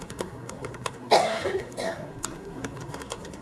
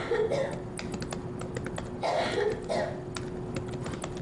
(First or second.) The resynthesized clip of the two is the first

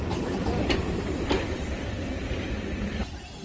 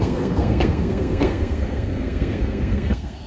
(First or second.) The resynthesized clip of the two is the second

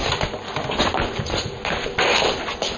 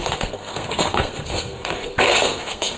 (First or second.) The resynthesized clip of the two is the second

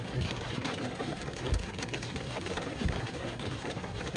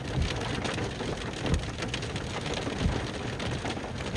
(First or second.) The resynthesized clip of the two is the first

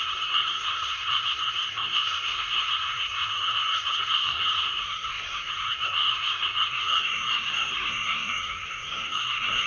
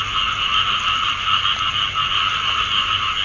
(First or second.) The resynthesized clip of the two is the first